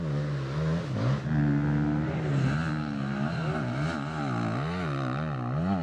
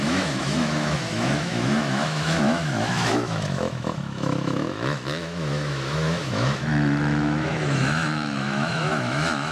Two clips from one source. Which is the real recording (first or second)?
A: first